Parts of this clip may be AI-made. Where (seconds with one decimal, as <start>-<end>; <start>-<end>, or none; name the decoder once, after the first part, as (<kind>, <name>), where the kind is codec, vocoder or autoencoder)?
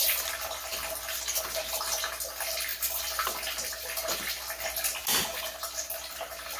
none